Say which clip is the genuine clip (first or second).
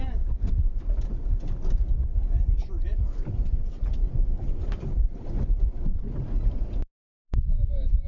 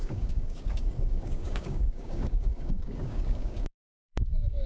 first